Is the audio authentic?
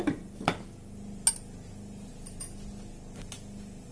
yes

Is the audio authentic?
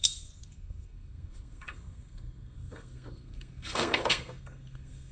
no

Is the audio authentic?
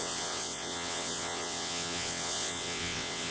no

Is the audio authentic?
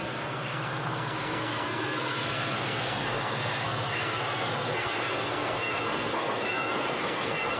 no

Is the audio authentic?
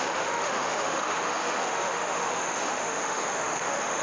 no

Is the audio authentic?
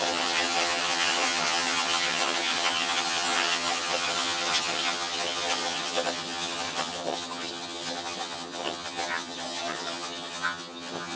no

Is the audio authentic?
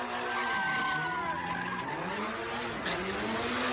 yes